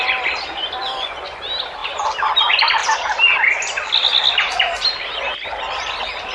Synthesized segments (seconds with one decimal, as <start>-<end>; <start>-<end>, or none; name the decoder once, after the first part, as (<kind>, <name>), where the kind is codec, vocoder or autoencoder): 0.8-1.4 (vocoder, Vocos)